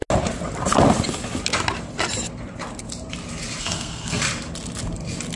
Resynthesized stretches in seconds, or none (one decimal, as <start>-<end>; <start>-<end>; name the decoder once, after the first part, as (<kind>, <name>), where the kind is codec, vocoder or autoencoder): 3.6-4.2 (codec, SNAC)